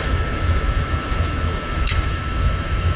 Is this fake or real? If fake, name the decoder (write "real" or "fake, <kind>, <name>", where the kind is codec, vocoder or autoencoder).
fake, autoencoder, DAC-VAE